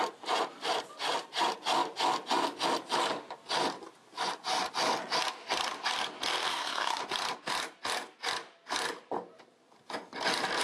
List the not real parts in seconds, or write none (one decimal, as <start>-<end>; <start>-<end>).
6.5-7.0